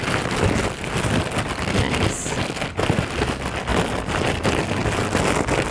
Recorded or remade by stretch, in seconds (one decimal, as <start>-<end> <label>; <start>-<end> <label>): 0.0-5.7 recorded

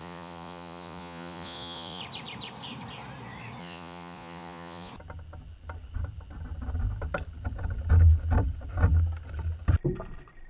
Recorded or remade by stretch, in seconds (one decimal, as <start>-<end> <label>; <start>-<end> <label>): 0.0-2.0 remade; 2.0-3.6 recorded; 3.6-4.9 remade; 4.9-10.5 recorded

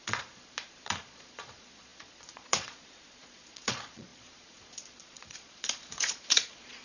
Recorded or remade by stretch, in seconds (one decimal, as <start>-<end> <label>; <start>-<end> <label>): 0.0-6.8 remade